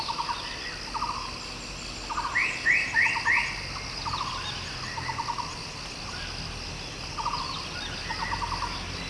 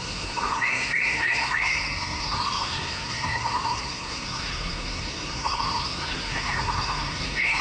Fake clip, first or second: second